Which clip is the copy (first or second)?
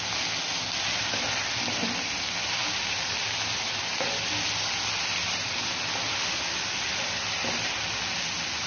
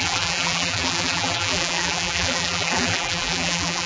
second